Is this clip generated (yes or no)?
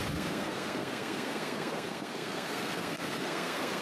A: yes